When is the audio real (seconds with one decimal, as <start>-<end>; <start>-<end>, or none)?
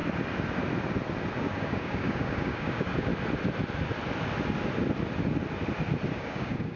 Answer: 0.0-1.3; 3.1-6.1